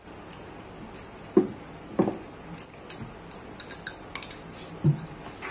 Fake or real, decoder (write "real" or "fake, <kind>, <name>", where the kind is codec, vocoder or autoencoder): real